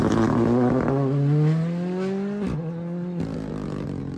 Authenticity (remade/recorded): recorded